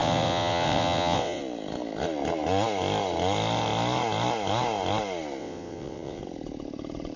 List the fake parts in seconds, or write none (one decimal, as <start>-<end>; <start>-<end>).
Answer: 0.0-1.4; 5.4-6.2

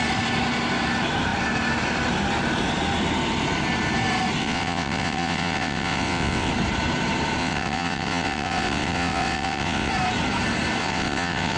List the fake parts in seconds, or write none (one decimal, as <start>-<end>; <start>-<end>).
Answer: 4.4-6.5; 7.4-9.9; 10.8-11.6

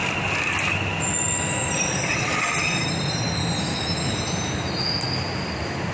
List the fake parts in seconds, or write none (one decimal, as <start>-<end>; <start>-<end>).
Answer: none

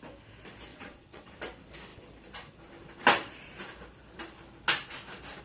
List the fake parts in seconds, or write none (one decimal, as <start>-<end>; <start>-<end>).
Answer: 0.7-1.3

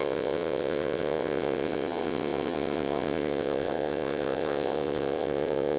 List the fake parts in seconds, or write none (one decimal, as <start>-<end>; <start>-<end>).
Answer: 0.0-5.8

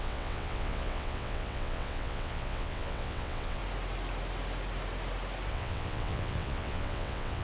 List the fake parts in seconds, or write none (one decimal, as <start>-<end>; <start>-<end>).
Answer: 0.0-3.6; 5.5-7.4